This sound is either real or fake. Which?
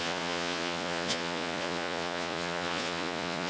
fake